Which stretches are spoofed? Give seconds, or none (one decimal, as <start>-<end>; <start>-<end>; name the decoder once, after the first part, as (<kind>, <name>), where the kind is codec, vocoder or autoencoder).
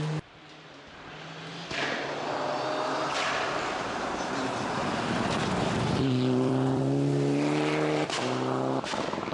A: 4.8-6.8 (vocoder, BigVGAN v2)